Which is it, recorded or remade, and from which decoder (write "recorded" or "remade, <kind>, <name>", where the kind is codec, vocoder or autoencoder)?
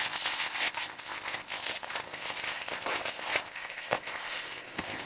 remade, codec, ZipCodec